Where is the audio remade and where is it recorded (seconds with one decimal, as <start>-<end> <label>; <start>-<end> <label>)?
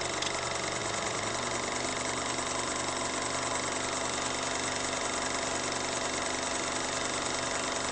0.0-0.8 recorded; 0.8-1.3 remade; 1.3-7.9 recorded